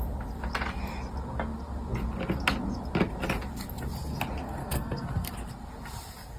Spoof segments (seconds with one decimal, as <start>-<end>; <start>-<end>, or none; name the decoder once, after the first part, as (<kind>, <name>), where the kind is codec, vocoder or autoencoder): 4.6-5.3 (codec, SNAC)